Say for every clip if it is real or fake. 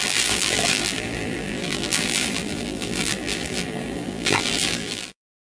fake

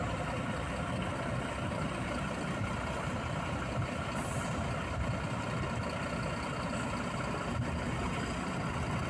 real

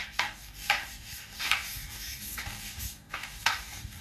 fake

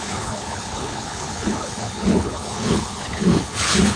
fake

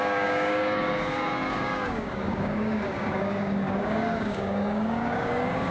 fake